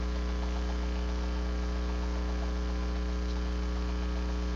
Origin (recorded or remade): recorded